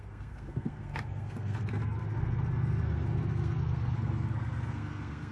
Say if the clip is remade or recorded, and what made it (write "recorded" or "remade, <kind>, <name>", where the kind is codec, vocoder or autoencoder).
remade, codec, SNAC